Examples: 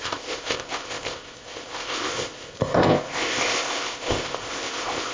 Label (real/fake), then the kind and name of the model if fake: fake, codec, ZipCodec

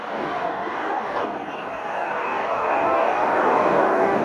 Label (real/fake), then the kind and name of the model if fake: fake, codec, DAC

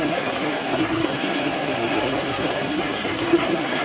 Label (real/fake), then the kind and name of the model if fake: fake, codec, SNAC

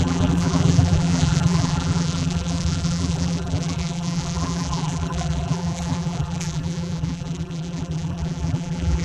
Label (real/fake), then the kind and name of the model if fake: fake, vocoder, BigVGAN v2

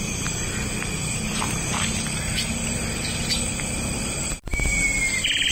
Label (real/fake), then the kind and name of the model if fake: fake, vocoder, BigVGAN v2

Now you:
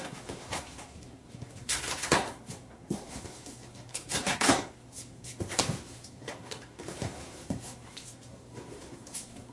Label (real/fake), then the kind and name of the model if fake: fake, codec, SNAC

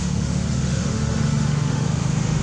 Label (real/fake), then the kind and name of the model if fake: fake, autoencoder, DAC-VAE